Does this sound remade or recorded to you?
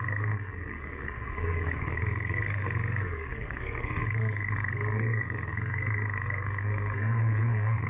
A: remade